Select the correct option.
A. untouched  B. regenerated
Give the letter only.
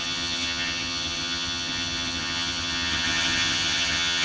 B